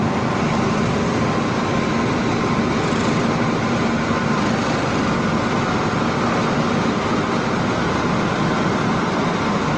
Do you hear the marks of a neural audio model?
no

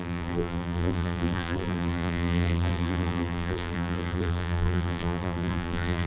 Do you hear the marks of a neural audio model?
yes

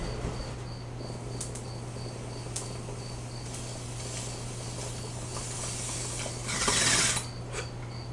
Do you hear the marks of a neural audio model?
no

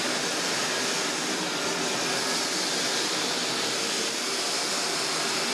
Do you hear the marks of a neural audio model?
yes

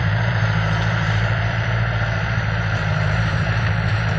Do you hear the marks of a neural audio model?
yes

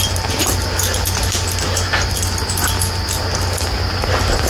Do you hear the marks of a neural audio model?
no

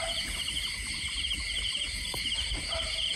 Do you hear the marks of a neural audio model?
yes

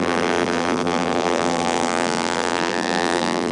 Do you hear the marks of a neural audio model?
yes